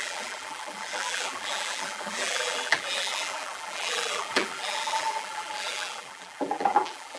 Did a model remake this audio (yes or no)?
yes